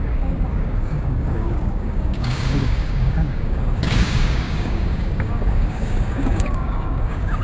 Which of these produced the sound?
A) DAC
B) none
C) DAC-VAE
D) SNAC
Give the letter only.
A